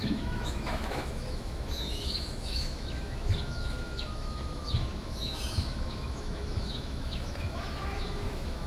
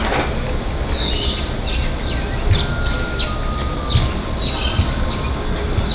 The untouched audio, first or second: second